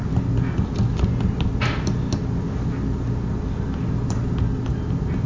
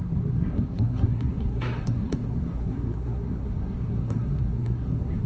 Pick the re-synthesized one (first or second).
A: second